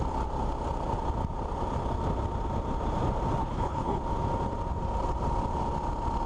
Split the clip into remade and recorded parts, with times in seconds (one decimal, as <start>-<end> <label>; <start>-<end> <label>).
0.0-3.4 recorded; 3.4-4.0 remade; 4.0-6.3 recorded

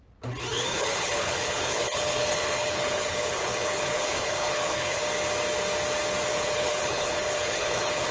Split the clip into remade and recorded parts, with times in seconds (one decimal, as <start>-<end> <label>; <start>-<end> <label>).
0.0-0.5 recorded; 0.5-5.0 remade; 5.0-6.3 recorded; 6.3-8.1 remade

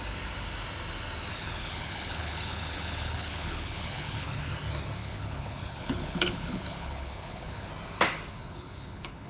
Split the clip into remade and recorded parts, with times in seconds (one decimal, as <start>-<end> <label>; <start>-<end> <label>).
0.0-1.3 recorded; 1.3-4.5 remade; 4.5-5.0 recorded; 5.0-7.7 remade; 7.7-8.3 recorded; 8.3-9.3 remade

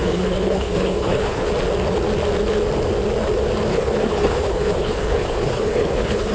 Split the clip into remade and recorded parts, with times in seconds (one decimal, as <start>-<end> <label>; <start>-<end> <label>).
0.0-1.5 remade; 1.5-3.7 recorded; 3.7-6.3 remade